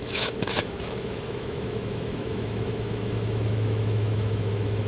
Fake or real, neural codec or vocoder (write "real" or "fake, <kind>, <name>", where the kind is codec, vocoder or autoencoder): fake, autoencoder, DAC-VAE